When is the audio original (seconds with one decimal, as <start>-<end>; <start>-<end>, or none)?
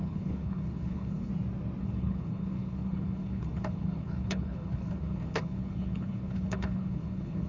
1.3-1.8